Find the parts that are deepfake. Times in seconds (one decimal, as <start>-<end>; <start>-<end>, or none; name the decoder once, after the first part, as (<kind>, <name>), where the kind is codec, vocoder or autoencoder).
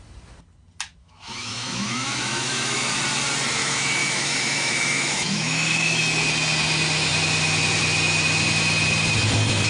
1.0-2.9 (autoencoder, DAC-VAE); 3.6-6.0